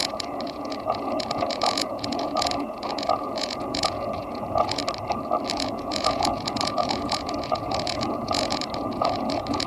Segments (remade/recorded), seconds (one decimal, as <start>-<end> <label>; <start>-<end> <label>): 0.0-4.8 remade; 4.8-5.5 recorded; 5.5-9.7 remade